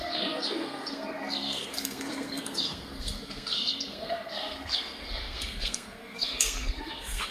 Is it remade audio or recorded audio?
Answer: remade